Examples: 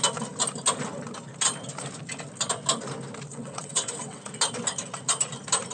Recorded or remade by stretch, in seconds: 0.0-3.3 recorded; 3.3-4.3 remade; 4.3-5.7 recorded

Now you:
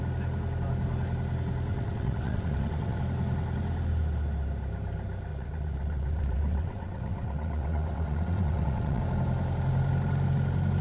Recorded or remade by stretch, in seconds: 0.0-1.7 recorded; 1.7-3.0 remade; 3.0-5.3 recorded; 5.3-9.0 remade; 9.0-10.8 recorded

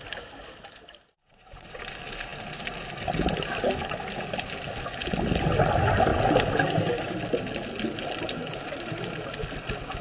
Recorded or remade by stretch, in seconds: 0.0-1.2 recorded; 1.2-1.8 remade; 1.8-10.0 recorded